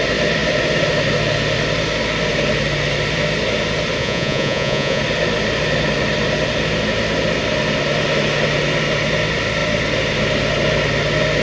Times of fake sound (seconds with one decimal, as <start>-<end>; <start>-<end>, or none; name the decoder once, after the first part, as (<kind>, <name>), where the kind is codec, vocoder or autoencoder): 4.0-5.0 (vocoder, Vocos)